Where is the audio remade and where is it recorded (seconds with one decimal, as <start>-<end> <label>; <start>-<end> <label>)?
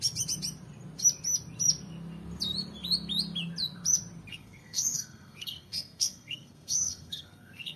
0.0-4.3 recorded; 4.3-7.8 remade